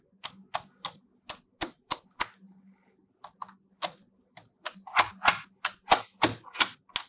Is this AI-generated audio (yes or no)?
no